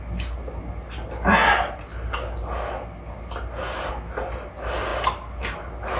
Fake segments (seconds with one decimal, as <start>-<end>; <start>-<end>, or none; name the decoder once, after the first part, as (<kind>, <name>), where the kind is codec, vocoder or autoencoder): none